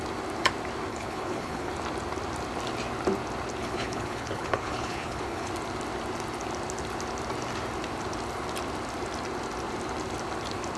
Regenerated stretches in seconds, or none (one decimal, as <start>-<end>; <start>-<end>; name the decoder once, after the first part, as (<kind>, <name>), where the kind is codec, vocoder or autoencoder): 0.9-1.7 (codec, HILCodec); 3.6-5.5